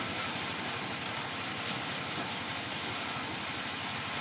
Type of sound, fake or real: real